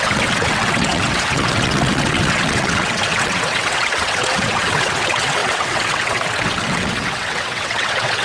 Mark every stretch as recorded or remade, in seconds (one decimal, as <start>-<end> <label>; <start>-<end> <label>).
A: 0.0-8.2 remade